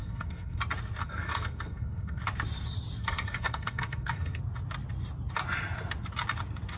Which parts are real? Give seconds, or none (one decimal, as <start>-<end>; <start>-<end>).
0.6-1.0; 2.2-3.0; 4.4-6.8